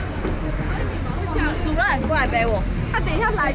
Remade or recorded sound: recorded